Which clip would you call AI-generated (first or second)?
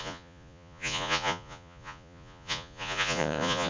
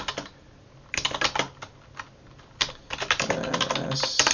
first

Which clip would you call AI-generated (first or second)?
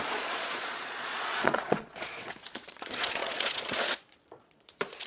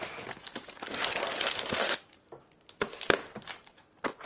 first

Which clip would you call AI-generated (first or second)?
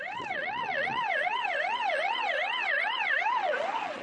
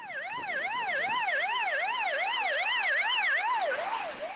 first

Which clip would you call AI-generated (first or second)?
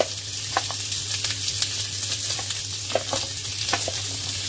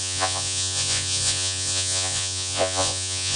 second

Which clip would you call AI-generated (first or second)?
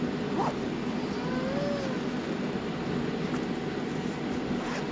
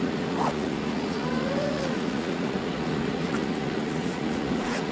second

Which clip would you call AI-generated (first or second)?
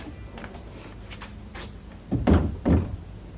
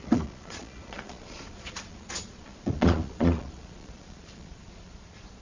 second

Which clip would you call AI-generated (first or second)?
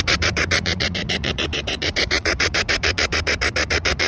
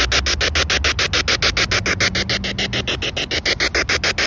first